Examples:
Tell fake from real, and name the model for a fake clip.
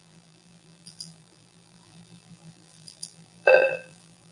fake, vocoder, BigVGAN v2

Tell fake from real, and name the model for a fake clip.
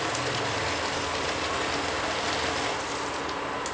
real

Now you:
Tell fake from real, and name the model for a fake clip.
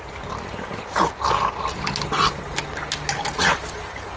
real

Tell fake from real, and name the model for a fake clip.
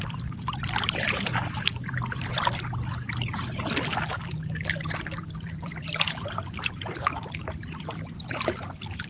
fake, vocoder, BigVGAN v2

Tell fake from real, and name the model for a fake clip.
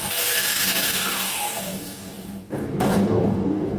fake, codec, DAC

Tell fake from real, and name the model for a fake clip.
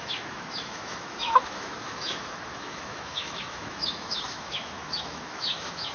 fake, autoencoder, DAC-VAE